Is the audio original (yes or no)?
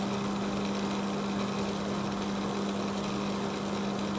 yes